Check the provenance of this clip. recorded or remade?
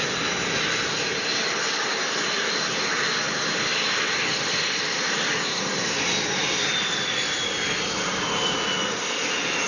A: recorded